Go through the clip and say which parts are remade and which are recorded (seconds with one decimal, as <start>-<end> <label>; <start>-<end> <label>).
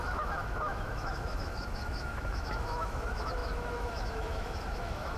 0.0-5.2 remade